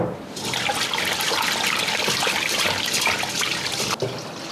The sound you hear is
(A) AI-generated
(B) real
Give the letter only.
B